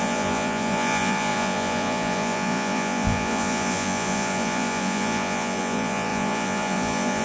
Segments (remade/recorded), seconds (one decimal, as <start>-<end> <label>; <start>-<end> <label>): 0.0-7.2 remade